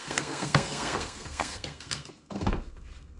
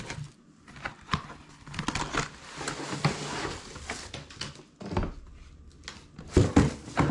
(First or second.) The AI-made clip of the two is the first